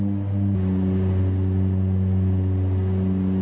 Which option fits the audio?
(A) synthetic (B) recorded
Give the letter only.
B